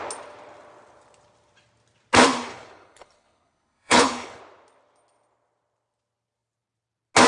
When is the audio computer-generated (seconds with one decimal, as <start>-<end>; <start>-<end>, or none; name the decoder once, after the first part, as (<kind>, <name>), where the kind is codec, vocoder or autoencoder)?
2.5-4.4 (codec, HILCodec)